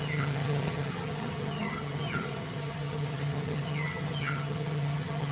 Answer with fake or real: fake